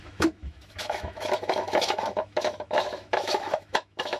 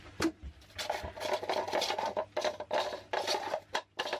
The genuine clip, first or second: second